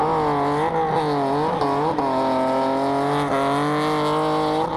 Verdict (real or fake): real